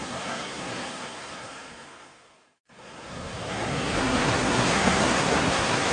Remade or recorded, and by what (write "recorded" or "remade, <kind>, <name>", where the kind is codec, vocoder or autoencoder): remade, codec, SNAC